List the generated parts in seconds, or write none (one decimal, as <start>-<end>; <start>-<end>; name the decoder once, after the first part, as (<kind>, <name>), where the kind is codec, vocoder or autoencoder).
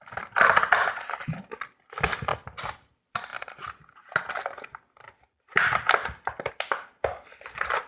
0.0-7.9 (vocoder, BigVGAN v2)